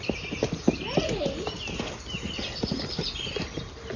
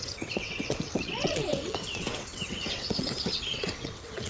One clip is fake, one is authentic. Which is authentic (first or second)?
first